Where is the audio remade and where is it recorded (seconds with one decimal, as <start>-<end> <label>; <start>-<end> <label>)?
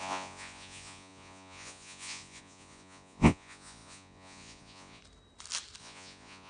0.0-5.0 remade; 5.0-5.8 recorded; 5.8-6.5 remade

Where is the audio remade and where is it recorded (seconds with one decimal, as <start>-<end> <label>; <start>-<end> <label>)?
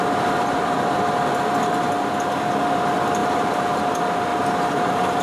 0.0-3.2 recorded; 3.2-3.8 remade; 3.8-4.3 recorded; 4.3-5.2 remade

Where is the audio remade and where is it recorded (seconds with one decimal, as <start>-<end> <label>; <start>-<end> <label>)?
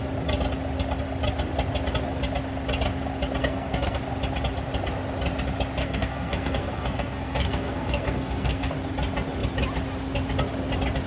0.0-3.4 recorded; 3.4-4.0 remade; 4.0-5.8 recorded; 5.8-8.7 remade; 8.7-11.1 recorded